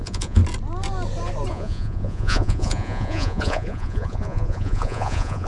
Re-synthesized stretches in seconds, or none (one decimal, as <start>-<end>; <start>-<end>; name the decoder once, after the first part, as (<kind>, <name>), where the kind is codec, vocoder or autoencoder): 0.0-0.4 (vocoder, Vocos); 1.5-5.5